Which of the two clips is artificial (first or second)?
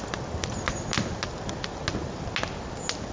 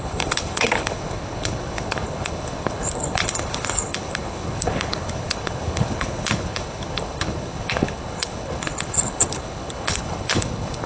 second